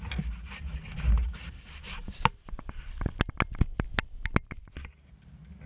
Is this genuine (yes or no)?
yes